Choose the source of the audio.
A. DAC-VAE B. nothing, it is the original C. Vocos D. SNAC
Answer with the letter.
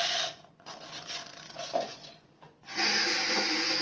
C